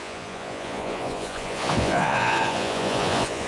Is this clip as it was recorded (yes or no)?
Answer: no